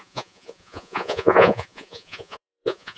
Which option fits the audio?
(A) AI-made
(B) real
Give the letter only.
A